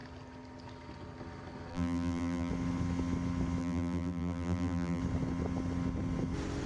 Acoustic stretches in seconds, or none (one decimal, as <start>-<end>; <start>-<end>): 0.0-1.7; 2.5-3.6; 5.0-6.7